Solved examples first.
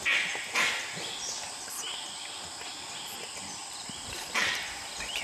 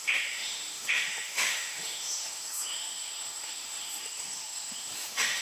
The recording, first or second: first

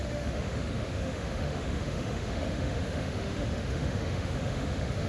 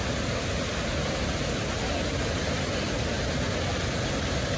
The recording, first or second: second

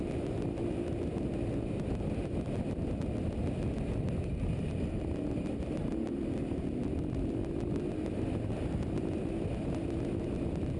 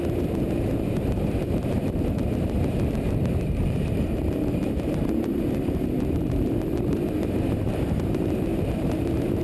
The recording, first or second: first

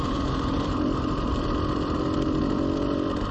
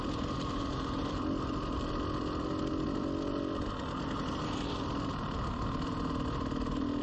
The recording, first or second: second